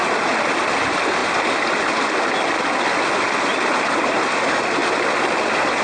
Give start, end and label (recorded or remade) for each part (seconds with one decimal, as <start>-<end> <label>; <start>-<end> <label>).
0.0-5.8 recorded